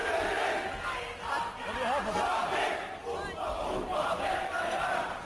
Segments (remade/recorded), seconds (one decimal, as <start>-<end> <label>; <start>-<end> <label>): 0.0-5.2 recorded